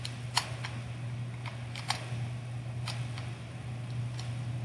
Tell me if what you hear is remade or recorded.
recorded